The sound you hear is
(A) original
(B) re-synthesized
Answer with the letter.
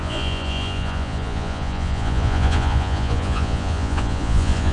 B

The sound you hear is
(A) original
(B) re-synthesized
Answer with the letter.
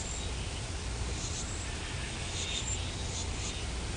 A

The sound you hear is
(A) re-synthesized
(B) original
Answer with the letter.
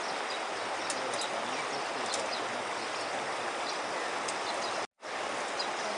B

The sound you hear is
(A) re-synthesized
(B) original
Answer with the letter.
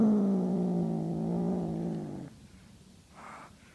B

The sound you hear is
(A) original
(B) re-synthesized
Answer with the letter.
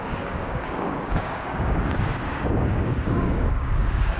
B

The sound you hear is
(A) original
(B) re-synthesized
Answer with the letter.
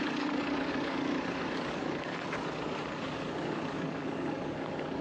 B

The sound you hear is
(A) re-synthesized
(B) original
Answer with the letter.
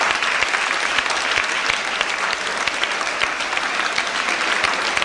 B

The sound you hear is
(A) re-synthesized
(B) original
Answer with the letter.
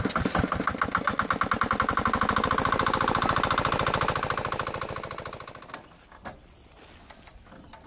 B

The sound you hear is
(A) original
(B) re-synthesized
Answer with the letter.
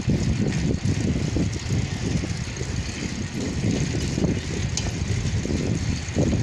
A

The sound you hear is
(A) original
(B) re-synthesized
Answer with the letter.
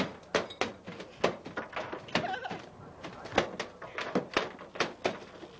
A